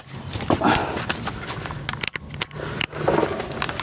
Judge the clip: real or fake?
real